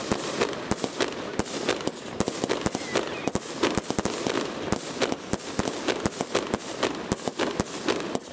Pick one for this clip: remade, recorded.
recorded